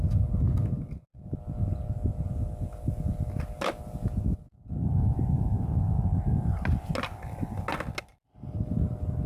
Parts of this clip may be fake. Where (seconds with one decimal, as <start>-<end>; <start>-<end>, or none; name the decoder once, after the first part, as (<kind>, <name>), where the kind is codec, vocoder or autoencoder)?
8.1-8.6 (vocoder, BigVGAN v2)